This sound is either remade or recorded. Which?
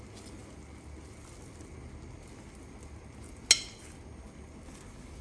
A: recorded